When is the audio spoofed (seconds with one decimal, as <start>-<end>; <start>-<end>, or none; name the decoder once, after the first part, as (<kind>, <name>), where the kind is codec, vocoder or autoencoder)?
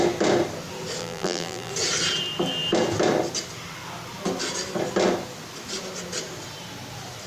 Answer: 1.0-1.7 (vocoder, BigVGAN v2)